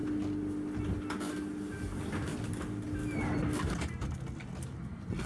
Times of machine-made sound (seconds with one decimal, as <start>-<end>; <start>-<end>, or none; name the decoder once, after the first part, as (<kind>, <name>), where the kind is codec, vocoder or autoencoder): none